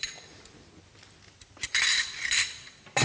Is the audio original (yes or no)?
no